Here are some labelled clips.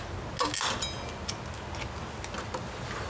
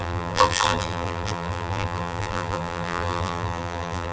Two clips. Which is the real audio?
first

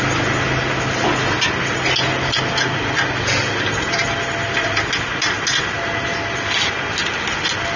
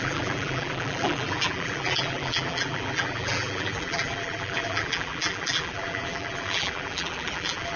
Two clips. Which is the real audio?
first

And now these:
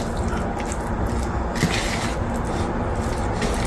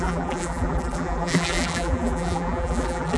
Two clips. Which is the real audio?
first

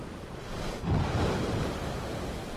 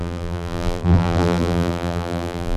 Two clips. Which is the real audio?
first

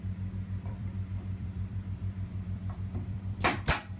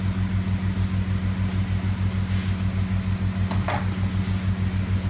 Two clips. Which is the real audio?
second